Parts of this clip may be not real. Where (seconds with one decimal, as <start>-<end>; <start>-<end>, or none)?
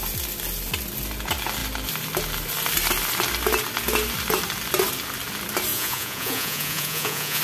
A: 5.7-7.4